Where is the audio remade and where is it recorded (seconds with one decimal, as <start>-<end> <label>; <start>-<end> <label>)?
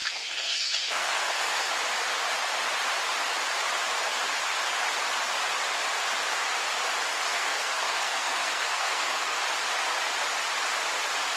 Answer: 0.0-1.7 remade; 1.7-7.1 recorded; 7.1-9.4 remade; 9.4-11.4 recorded